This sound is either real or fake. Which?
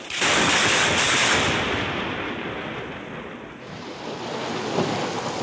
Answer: fake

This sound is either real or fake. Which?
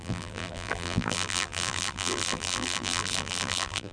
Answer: fake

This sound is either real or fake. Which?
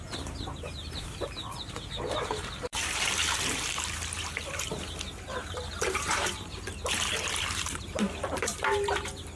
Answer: fake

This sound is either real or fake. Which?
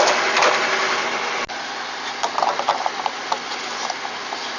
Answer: real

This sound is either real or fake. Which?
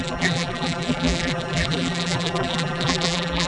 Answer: fake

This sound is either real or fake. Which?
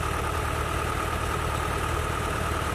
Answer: fake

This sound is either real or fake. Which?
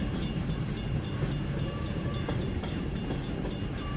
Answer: fake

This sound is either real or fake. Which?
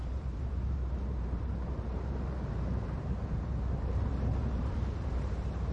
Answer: fake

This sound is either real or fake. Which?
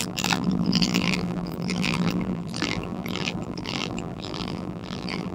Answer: fake